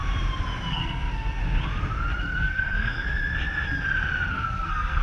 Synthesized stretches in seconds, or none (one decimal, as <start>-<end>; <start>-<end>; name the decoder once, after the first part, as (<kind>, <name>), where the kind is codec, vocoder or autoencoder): 0.7-1.4 (codec, SNAC); 2.2-3.2; 4.3-5.0